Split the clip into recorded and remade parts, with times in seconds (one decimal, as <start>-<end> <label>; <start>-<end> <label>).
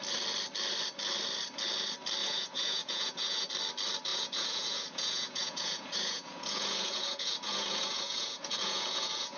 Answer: 0.0-2.2 recorded; 2.2-3.5 remade; 3.5-4.1 recorded; 4.1-9.4 remade